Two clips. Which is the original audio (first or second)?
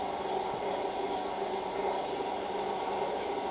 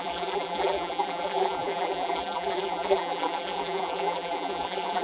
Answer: first